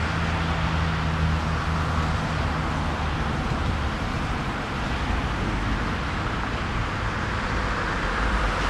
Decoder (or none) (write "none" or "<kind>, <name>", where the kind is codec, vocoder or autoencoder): none